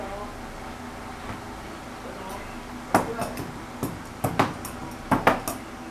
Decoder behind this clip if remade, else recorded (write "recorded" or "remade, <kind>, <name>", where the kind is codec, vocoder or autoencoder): recorded